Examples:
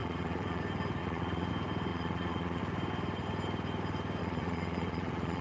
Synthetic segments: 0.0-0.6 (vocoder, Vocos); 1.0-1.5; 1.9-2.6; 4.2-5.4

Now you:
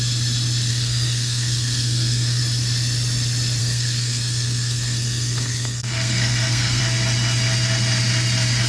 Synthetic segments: 0.7-2.4 (codec, SNAC); 3.6-6.8

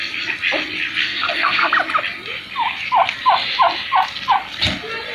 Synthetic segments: 1.0-1.7 (codec, SNAC)

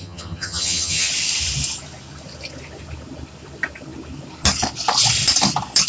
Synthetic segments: 0.0-1.1 (vocoder, HiFi-GAN)

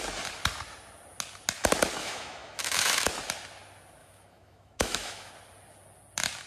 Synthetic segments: 2.0-3.1 (autoencoder, DAC-VAE); 4.0-5.3

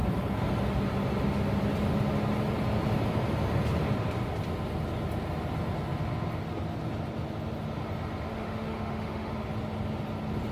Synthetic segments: 8.3-9.3 (autoencoder, DAC-VAE)